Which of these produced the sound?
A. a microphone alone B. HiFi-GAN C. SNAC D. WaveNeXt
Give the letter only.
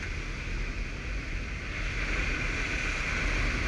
A